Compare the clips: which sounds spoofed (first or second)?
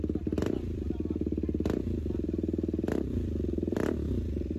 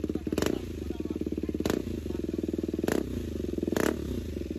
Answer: first